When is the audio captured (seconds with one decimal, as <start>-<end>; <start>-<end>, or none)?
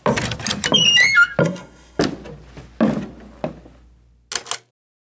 0.0-1.4; 2.0-5.0